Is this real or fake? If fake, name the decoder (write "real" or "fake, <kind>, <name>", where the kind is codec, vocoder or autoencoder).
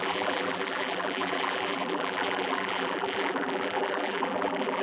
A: fake, vocoder, BigVGAN v2